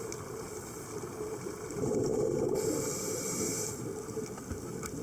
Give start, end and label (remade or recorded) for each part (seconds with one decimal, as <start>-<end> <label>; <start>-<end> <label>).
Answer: 0.0-5.0 recorded